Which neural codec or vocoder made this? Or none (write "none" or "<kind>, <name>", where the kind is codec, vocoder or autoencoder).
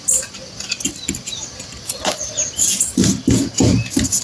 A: none